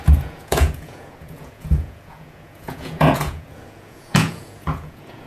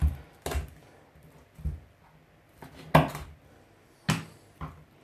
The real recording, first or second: second